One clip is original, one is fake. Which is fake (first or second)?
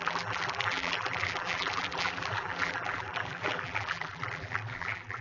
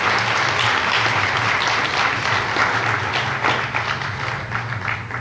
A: first